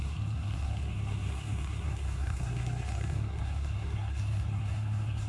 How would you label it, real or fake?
fake